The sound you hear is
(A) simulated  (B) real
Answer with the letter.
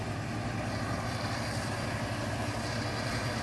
B